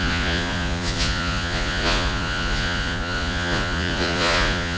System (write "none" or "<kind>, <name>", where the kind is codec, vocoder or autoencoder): vocoder, Vocos